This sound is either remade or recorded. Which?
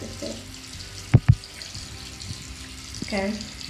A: recorded